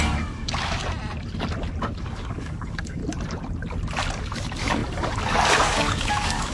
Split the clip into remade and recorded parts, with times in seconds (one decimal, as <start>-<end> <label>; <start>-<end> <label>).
0.0-0.8 remade; 0.8-2.0 recorded; 2.0-3.0 remade; 3.0-4.2 recorded; 4.2-6.5 remade